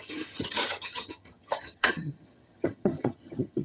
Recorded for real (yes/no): no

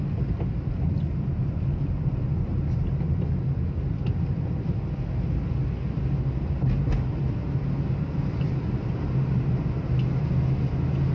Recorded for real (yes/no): yes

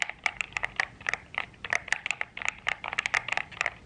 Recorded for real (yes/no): no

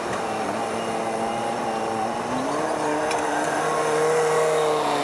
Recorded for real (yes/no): yes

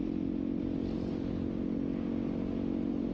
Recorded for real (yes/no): yes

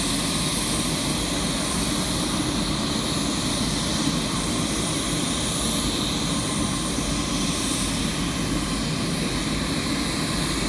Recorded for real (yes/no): yes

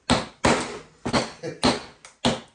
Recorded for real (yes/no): yes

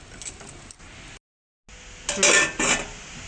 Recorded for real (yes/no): yes